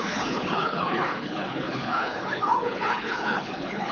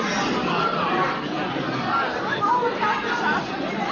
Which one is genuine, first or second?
second